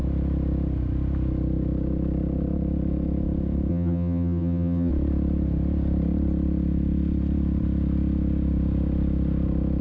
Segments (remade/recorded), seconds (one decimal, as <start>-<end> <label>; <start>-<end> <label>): 0.0-3.7 recorded; 3.7-4.9 remade; 4.9-9.8 recorded